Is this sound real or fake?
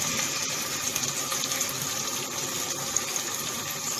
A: real